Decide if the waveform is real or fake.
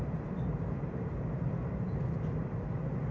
fake